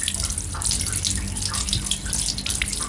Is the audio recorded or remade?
recorded